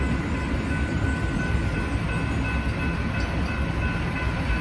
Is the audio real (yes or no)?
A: yes